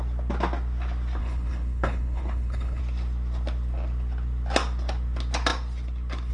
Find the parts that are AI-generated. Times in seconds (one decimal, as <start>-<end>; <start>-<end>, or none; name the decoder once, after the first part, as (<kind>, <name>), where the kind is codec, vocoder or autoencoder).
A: 1.2-2.8 (codec, HILCodec)